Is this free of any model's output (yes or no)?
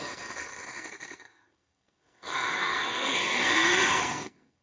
no